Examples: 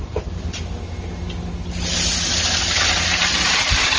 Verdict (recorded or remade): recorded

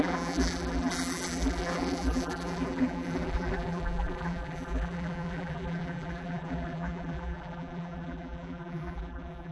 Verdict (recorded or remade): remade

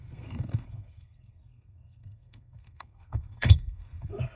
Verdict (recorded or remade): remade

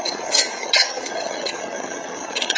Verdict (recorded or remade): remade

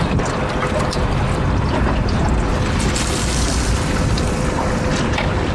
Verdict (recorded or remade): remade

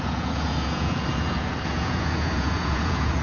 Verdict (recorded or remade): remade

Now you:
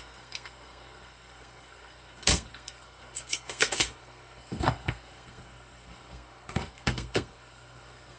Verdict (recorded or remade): remade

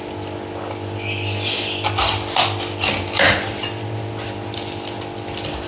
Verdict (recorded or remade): recorded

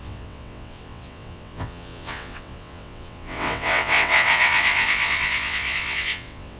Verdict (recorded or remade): remade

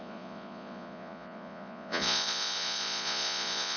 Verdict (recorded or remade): remade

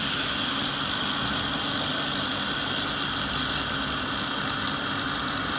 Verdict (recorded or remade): recorded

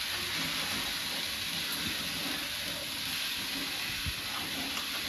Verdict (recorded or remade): recorded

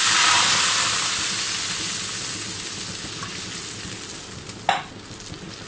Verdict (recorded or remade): recorded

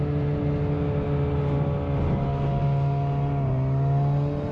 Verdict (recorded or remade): recorded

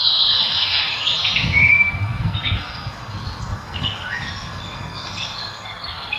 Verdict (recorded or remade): remade